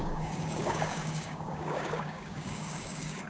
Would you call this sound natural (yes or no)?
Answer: no